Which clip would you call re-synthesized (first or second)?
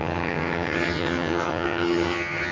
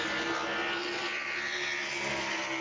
first